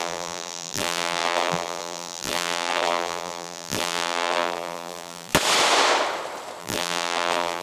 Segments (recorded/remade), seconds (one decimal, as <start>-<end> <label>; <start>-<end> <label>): 0.0-5.3 remade; 5.3-6.6 recorded; 6.6-7.6 remade